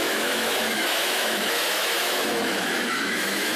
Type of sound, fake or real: fake